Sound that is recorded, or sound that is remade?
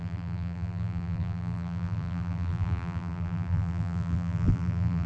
remade